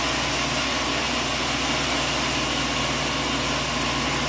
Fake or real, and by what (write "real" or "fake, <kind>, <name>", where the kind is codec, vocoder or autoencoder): real